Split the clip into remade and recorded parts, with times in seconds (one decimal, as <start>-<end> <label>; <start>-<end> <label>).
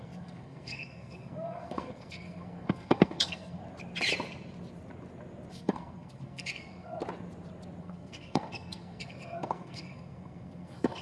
0.0-3.6 remade; 3.6-5.5 recorded; 5.5-7.0 remade; 7.0-7.8 recorded; 7.8-11.0 remade